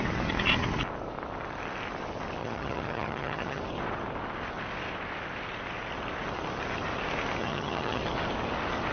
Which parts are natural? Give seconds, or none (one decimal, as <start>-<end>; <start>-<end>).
0.0-2.4; 3.6-7.4; 8.0-8.9